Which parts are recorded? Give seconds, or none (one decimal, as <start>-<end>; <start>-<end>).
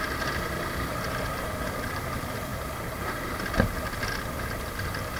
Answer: 0.0-5.2